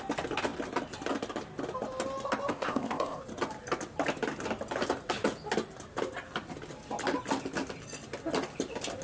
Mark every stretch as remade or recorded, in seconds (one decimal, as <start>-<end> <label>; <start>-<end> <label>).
0.0-2.5 recorded; 2.5-3.2 remade; 3.2-9.0 recorded